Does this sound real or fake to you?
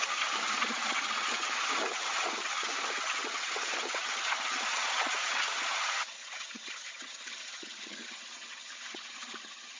fake